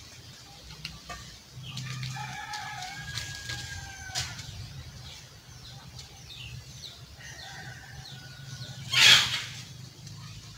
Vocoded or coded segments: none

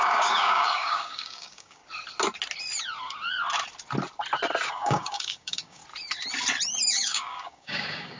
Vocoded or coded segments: 0.0-1.8; 4.7-5.8; 6.9-8.2